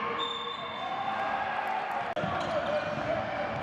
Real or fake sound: real